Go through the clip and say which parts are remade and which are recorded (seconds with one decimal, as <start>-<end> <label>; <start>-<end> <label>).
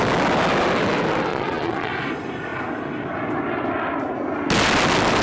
0.0-1.3 recorded; 1.3-1.9 remade; 1.9-5.2 recorded